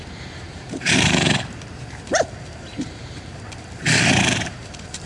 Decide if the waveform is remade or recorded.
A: remade